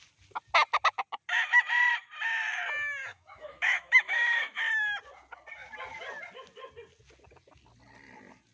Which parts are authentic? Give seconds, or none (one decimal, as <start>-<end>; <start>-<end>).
0.0-3.0; 4.6-8.5